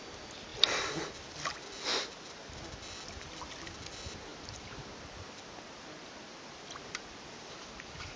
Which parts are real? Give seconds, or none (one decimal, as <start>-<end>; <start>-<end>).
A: 0.0-1.9; 2.6-4.3; 4.9-8.2